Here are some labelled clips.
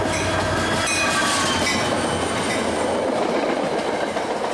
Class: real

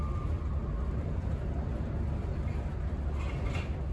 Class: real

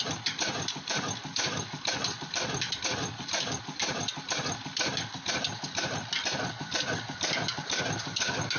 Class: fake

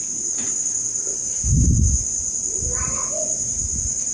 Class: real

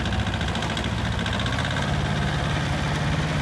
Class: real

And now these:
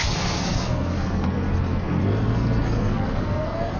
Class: fake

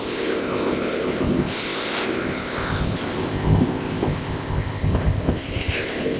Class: fake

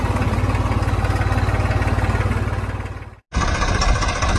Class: real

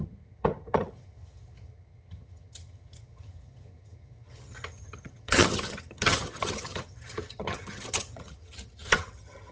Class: fake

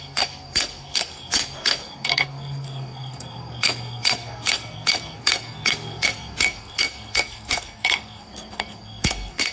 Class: fake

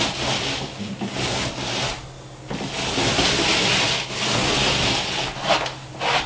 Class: real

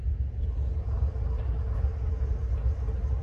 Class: real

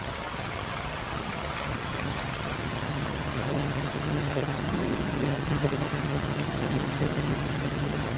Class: fake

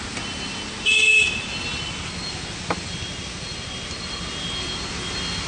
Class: real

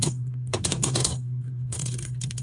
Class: fake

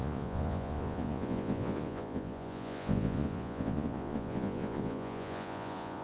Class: fake